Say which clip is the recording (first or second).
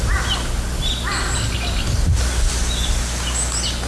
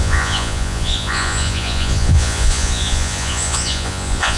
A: first